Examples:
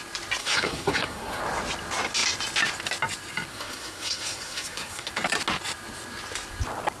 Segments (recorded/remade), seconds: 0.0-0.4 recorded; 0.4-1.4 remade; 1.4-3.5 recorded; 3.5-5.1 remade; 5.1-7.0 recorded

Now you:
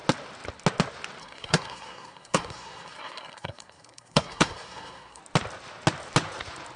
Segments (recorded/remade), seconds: 0.0-1.2 recorded; 1.2-5.2 remade; 5.2-6.8 recorded

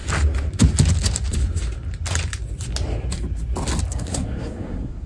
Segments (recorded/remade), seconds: 0.0-3.9 recorded; 3.9-5.1 remade

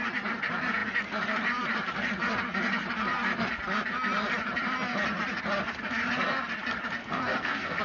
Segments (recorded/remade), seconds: 0.0-7.0 recorded; 7.0-7.8 remade

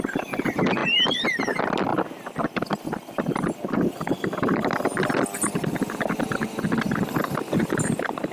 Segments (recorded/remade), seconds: 0.0-8.3 recorded

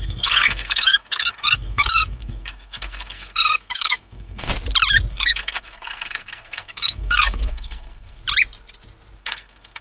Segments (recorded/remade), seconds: 0.0-4.5 remade; 4.5-5.1 recorded; 5.1-8.2 remade; 8.2-9.2 recorded; 9.2-9.8 remade

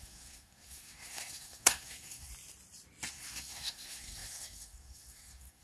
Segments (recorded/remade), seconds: 0.0-2.3 remade; 2.3-3.1 recorded; 3.1-5.6 remade

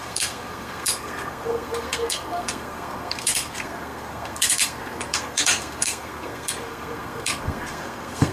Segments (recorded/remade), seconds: 0.0-8.3 remade